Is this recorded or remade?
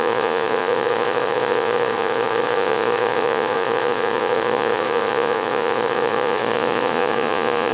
remade